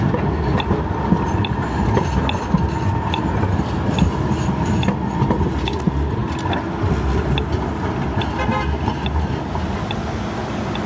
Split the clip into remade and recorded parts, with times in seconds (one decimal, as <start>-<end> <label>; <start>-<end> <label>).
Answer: 0.0-10.9 recorded